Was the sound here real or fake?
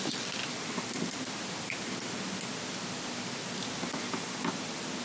real